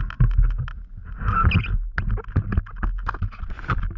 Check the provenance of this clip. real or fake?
real